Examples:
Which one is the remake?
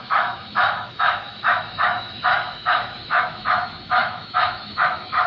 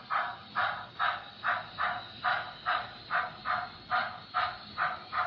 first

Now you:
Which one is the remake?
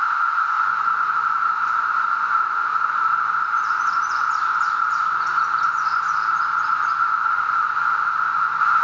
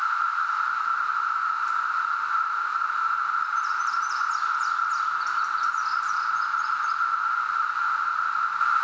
first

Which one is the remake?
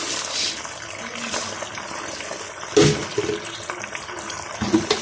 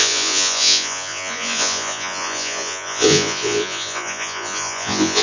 second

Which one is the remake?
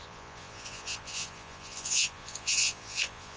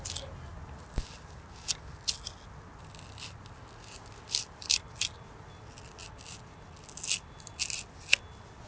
first